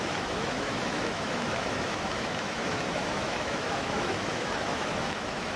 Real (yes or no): no